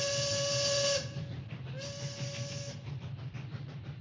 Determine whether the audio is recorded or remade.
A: recorded